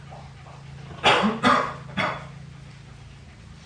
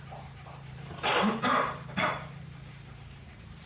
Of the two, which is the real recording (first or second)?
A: first